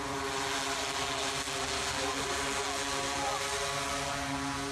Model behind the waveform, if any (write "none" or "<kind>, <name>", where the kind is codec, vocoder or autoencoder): none